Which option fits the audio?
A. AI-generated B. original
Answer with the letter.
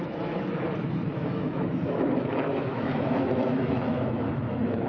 A